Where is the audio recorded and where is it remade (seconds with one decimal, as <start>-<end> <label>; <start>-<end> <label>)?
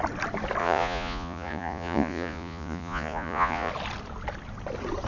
0.0-0.6 recorded; 0.6-3.7 remade; 3.7-5.1 recorded